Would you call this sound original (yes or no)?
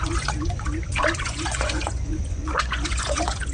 no